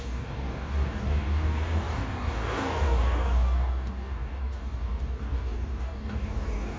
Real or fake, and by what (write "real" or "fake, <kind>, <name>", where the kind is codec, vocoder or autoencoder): fake, codec, DAC